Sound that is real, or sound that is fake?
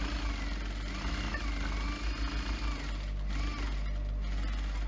real